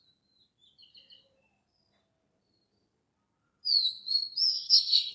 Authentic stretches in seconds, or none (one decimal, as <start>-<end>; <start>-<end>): 0.0-4.5